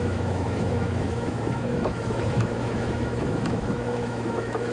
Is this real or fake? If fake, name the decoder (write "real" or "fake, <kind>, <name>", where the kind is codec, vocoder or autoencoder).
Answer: fake, autoencoder, DAC-VAE